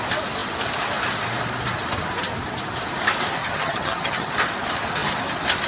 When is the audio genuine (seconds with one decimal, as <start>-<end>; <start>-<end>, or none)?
0.0-3.4; 4.3-5.7

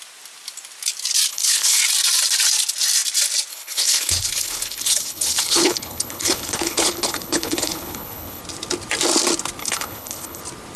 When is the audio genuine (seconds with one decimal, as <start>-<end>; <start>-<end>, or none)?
0.0-1.3; 1.8-3.5; 8.4-9.6; 10.4-10.8